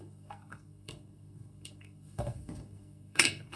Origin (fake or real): fake